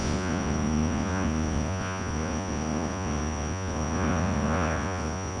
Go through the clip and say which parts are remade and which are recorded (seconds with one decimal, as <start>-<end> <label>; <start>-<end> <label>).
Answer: 0.0-5.4 remade